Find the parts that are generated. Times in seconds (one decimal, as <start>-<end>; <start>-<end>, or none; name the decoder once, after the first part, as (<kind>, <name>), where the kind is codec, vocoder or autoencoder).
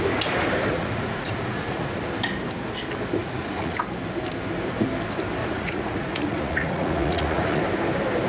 0.7-2.0 (vocoder, Vocos); 3.2-3.8; 5.4-7.6